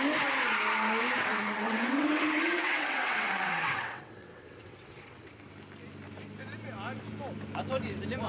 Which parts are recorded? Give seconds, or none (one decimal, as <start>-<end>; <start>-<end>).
0.0-1.3; 5.3-8.3